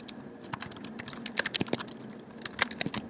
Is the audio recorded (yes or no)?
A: yes